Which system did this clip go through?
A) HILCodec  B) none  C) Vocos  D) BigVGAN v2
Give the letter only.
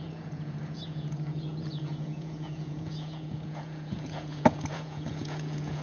C